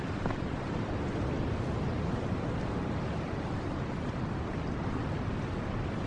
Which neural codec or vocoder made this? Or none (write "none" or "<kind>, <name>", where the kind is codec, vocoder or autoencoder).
none